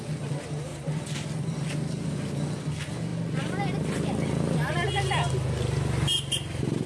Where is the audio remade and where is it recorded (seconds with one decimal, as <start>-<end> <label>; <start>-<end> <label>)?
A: 0.0-0.7 recorded; 0.7-1.5 remade; 1.5-6.9 recorded